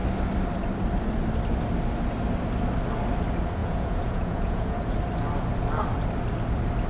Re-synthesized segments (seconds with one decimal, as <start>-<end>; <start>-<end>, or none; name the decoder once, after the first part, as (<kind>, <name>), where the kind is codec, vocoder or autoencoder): 3.6-4.8 (vocoder, Vocos)